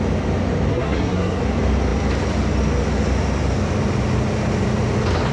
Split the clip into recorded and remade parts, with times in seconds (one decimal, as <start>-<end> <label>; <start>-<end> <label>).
0.0-0.7 recorded; 0.7-1.4 remade; 1.4-5.3 recorded

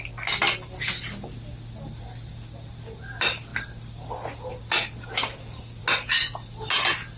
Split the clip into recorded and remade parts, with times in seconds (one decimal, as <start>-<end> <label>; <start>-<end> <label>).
0.0-7.2 recorded

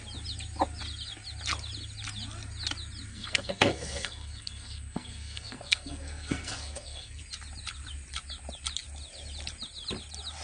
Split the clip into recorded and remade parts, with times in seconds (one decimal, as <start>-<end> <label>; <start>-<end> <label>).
0.0-3.1 recorded; 3.1-7.2 remade; 7.2-10.4 recorded

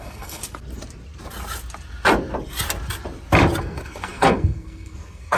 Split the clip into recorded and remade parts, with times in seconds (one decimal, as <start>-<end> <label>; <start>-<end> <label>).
0.0-0.4 remade; 0.4-3.6 recorded; 3.6-5.4 remade

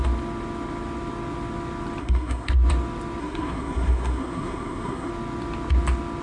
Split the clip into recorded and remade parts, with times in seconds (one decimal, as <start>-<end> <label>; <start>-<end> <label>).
0.0-2.0 recorded; 2.0-2.5 remade; 2.5-3.2 recorded; 3.2-5.1 remade; 5.1-6.2 recorded